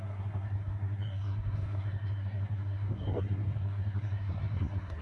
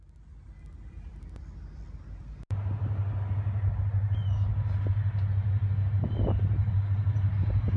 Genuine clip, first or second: second